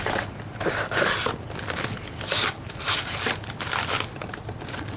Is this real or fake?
real